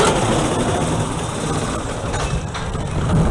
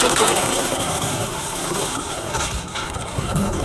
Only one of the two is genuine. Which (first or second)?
first